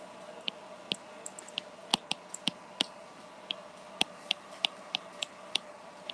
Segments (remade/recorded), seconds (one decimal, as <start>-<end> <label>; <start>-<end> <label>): 0.0-6.1 recorded